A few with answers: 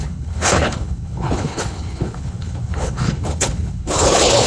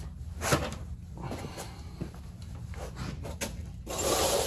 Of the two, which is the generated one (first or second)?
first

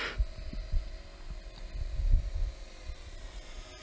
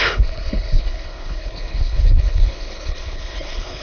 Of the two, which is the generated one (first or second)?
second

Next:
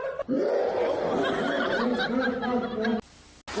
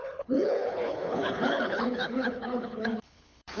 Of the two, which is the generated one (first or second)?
second